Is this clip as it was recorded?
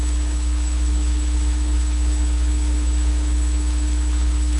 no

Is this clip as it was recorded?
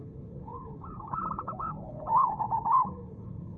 no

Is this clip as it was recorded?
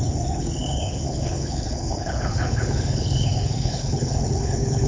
no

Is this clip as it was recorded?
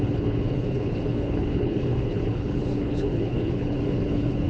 no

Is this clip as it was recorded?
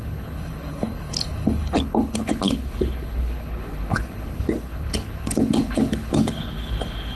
no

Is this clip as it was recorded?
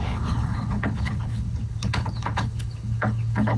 no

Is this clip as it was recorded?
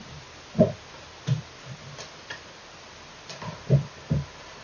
yes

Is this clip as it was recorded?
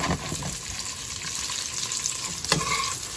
yes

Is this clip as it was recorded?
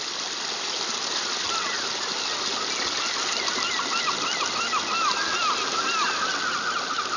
yes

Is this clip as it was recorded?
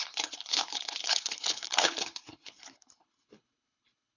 no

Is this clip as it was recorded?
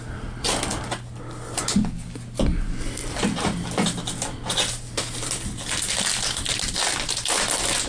yes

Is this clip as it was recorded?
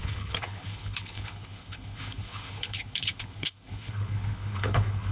no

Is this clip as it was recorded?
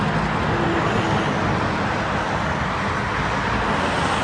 yes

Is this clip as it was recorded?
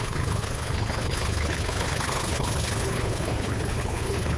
no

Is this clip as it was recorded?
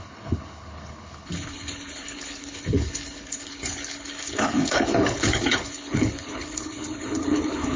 no